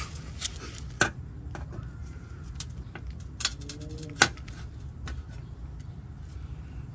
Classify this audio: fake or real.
real